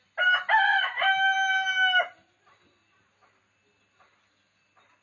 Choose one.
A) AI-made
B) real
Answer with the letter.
B